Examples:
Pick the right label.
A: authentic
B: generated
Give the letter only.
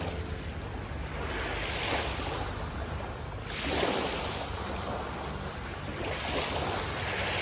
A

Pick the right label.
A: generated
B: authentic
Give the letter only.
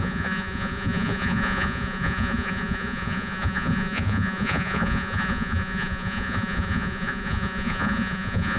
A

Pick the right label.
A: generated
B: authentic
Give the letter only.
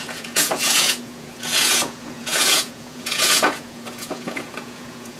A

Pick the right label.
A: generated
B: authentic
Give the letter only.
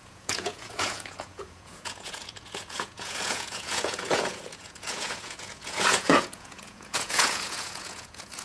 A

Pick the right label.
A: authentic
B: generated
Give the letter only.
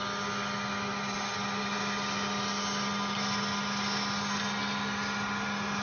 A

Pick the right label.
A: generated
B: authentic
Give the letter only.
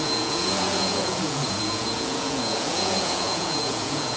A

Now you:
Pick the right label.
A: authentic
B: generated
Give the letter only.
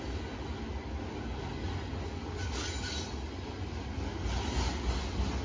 A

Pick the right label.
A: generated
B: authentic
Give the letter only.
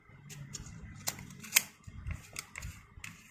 B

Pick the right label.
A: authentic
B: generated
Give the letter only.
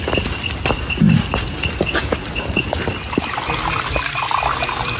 A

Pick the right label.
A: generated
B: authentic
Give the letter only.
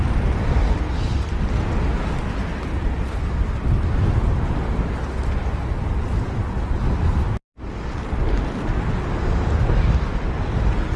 B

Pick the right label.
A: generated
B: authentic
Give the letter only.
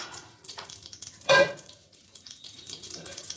A